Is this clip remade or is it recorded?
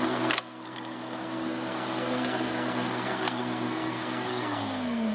remade